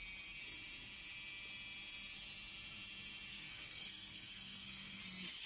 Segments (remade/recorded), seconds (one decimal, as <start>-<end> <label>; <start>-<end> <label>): 0.0-3.3 recorded; 3.3-5.0 remade; 5.0-5.5 recorded